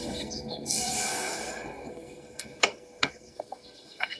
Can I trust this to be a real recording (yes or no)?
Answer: no